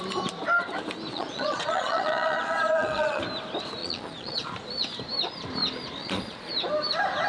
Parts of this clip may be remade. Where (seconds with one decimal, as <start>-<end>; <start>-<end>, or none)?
1.1-3.2; 3.8-4.5; 6.0-6.5